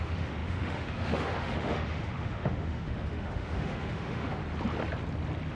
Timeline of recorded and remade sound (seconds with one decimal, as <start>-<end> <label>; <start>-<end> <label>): 0.0-4.4 remade; 4.4-5.5 recorded